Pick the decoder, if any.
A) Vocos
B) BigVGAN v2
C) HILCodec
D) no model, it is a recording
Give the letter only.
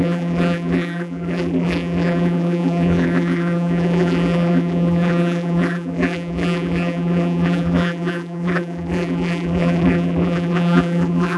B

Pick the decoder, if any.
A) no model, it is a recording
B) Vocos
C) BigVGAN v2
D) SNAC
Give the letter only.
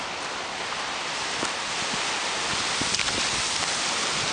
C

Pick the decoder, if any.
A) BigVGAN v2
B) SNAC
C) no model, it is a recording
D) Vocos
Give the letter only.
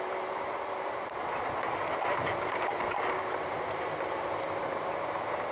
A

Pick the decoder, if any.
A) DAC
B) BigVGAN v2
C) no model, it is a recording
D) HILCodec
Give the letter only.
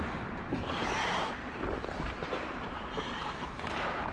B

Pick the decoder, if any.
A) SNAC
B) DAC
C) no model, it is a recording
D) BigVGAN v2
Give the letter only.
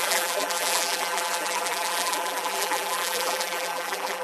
D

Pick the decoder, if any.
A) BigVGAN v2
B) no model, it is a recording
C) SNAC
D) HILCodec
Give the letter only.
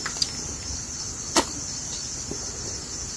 B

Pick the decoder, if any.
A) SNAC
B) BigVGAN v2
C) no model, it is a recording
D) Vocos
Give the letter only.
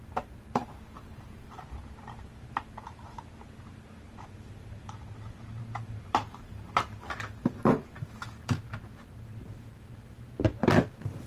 B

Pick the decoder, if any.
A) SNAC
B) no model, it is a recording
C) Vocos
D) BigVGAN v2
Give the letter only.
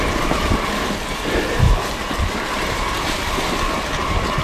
B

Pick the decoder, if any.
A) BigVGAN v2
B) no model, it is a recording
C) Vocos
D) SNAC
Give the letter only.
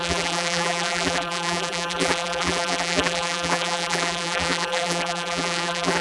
A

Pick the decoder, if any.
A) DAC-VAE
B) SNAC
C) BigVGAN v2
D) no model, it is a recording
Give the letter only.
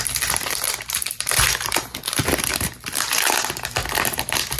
C